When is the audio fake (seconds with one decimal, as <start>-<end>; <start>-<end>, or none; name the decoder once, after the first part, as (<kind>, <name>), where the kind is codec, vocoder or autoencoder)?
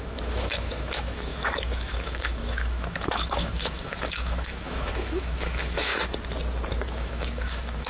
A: 0.0-5.9 (autoencoder, DAC-VAE); 6.9-7.9